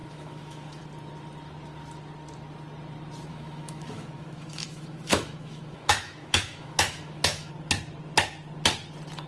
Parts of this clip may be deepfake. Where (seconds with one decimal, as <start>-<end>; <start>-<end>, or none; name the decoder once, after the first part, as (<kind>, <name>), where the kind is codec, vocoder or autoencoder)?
0.0-0.8 (autoencoder, DAC-VAE); 3.3-7.5